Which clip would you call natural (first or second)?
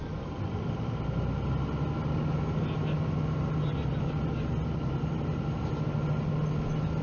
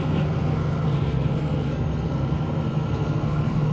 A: first